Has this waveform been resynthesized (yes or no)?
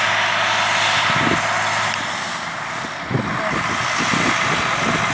no